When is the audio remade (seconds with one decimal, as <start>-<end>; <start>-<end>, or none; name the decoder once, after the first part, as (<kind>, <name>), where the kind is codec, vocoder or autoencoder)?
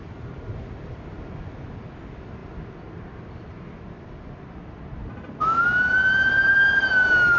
none